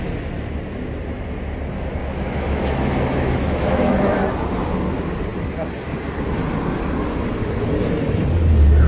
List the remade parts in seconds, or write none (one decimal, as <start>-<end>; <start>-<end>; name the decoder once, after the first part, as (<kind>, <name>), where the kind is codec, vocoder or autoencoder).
2.0-4.2 (autoencoder, DAC-VAE)